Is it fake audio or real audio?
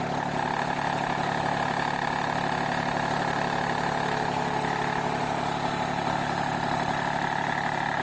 real